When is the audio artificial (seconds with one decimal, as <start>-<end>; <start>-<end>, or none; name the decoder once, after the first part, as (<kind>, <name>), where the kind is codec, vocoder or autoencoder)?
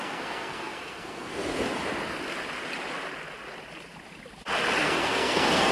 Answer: 0.0-1.4 (codec, SNAC); 4.8-5.7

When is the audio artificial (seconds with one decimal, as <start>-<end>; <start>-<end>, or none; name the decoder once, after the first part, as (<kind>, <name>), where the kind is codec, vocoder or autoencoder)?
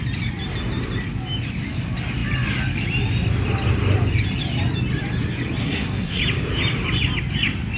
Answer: 5.6-6.2 (codec, SNAC)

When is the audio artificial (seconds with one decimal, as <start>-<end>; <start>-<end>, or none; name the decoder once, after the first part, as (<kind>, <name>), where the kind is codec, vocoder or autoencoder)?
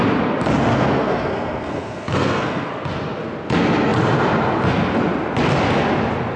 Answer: 0.7-2.7 (codec, SNAC)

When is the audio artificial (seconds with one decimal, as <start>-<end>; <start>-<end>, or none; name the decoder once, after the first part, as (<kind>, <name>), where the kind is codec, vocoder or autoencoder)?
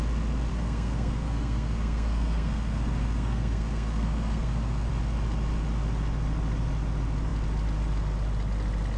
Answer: 0.5-4.9 (codec, SNAC)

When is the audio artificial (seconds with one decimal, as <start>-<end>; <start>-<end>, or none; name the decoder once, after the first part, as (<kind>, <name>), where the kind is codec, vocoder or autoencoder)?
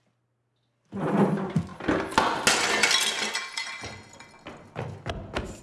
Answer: none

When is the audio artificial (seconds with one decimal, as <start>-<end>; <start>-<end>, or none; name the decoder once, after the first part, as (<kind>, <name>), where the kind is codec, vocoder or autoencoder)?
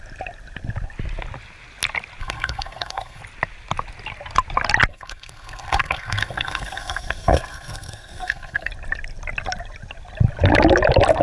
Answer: 2.2-3.2 (codec, SNAC); 4.9-8.7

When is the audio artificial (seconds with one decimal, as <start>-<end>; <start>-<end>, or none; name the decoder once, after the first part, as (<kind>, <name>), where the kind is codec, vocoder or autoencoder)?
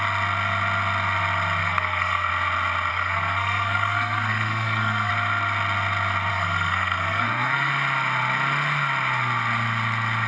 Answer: 1.6-2.3 (codec, SNAC); 2.9-5.1; 6.3-7.7